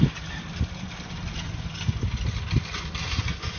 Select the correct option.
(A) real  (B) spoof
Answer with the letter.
A